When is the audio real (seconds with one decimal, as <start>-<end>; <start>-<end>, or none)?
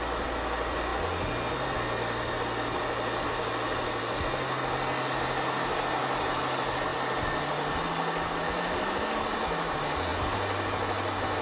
0.0-11.4